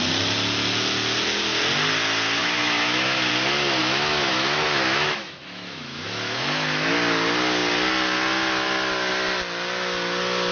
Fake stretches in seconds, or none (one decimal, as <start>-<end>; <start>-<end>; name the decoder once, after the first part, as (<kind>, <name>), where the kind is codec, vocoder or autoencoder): 2.4-3.3 (autoencoder, DAC-VAE); 3.8-6.9